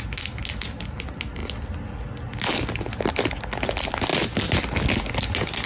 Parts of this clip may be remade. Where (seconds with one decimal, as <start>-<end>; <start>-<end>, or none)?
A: none